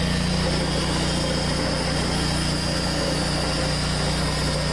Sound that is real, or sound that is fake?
real